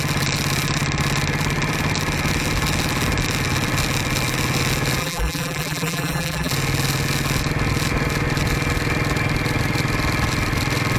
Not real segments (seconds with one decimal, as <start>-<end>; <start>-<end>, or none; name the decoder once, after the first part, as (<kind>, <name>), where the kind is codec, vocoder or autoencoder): 5.0-6.5 (vocoder, BigVGAN v2)